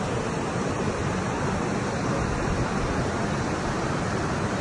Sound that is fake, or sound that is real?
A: real